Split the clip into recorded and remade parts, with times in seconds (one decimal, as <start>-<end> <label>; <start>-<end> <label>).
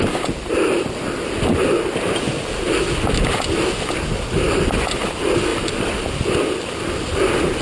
0.0-7.6 recorded